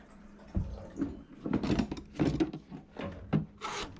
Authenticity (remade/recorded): recorded